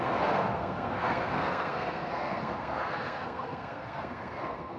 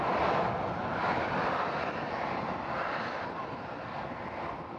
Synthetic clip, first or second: first